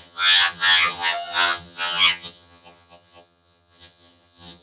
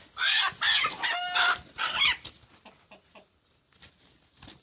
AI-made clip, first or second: first